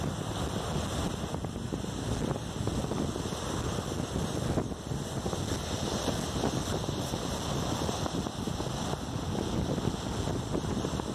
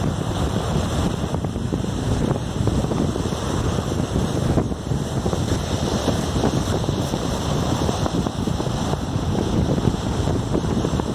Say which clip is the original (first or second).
first